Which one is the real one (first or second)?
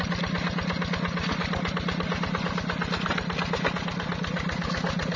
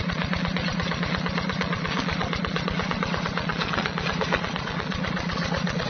first